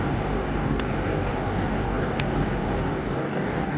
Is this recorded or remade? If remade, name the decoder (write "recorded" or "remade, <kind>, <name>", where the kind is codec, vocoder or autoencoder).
remade, codec, DAC